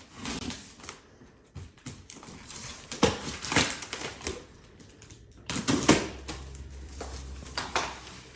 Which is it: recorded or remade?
remade